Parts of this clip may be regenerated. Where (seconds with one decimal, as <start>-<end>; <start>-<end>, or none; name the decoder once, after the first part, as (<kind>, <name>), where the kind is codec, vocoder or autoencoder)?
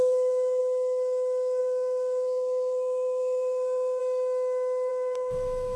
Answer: 0.0-0.6 (codec, SNAC); 1.6-4.0; 4.9-5.8